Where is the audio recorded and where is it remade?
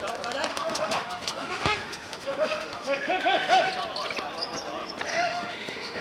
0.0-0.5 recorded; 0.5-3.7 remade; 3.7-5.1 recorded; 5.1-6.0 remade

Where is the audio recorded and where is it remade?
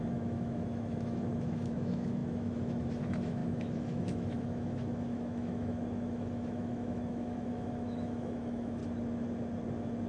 0.0-8.8 remade; 8.8-10.1 recorded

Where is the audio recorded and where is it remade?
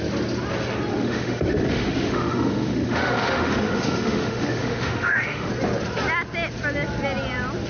0.0-0.9 recorded; 0.9-5.5 remade; 5.5-7.7 recorded